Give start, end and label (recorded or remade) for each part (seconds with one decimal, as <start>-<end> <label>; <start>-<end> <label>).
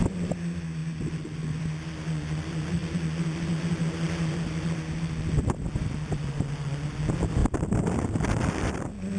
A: 0.0-9.2 recorded